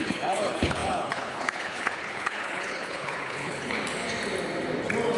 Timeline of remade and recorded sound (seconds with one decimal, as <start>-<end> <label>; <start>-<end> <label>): 0.0-3.8 remade; 3.8-5.2 recorded